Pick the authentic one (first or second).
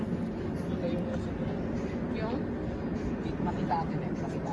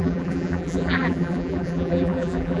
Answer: first